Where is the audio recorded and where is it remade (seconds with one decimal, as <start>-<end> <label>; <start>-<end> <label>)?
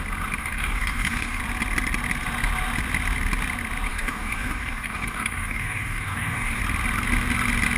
0.0-0.4 recorded; 0.4-1.4 remade; 1.4-3.9 recorded; 3.9-6.6 remade; 6.6-7.8 recorded